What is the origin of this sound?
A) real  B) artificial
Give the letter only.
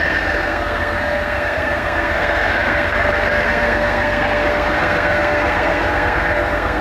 B